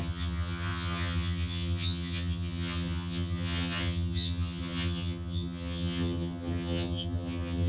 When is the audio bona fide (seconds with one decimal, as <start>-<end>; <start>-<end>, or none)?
none